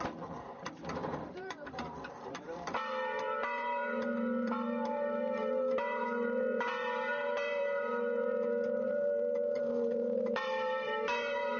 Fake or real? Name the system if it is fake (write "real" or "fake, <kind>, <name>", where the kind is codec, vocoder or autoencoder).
fake, vocoder, BigVGAN v2